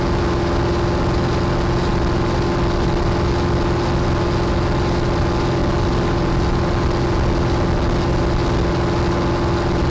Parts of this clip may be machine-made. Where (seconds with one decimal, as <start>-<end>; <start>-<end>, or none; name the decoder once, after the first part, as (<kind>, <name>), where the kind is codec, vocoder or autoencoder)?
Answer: none